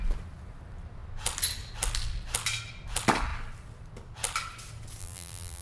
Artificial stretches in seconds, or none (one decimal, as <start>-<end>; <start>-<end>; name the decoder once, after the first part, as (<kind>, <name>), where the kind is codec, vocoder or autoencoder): 5.0-5.6 (vocoder, BigVGAN v2)